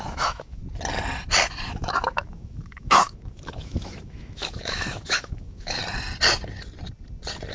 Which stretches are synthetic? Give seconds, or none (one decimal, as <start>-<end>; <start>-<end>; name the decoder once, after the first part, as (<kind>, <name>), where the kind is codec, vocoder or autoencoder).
0.0-0.6 (autoencoder, DAC-VAE); 1.7-5.8